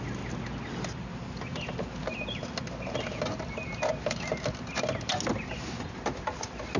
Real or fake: real